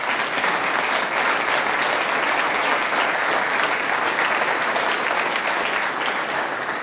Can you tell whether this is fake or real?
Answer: real